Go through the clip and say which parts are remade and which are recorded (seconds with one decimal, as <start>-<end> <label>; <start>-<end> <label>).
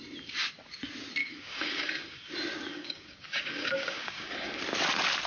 0.0-1.2 recorded; 1.2-2.3 remade; 2.3-2.7 recorded; 2.7-4.6 remade; 4.6-5.3 recorded